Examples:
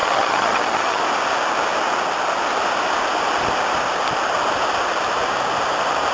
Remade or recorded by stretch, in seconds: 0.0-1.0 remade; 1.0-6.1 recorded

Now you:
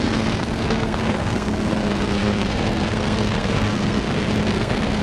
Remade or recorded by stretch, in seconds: 0.0-5.0 remade